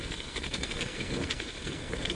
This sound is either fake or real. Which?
fake